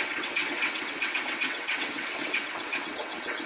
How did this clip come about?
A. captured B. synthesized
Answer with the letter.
B